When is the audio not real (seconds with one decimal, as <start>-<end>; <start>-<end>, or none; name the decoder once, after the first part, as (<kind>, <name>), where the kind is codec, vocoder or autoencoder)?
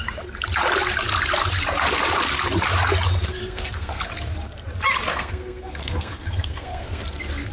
3.4-4.0 (codec, SNAC); 5.1-7.0